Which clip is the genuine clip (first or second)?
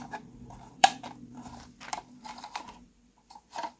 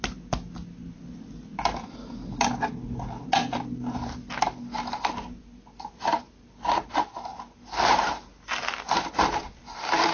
second